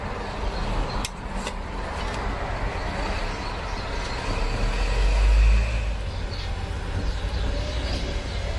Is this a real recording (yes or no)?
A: yes